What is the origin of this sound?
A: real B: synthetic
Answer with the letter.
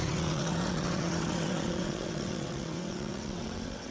B